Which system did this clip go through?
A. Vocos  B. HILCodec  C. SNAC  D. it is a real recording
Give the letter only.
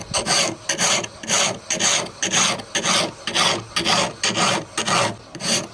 D